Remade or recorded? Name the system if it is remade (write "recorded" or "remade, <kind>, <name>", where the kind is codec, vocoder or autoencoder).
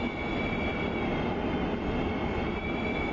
recorded